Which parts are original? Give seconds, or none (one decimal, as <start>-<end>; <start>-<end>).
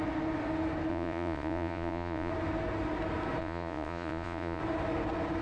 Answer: 0.0-0.9; 2.3-3.4; 4.6-5.4